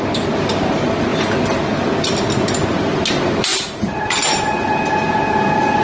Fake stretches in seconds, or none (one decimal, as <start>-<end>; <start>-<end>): none